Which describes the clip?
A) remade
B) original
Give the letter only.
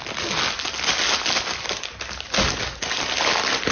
B